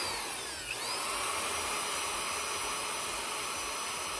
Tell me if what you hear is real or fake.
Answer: real